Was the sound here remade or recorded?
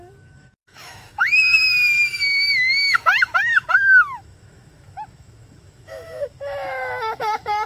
remade